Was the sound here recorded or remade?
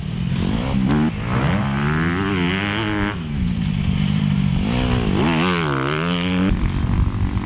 recorded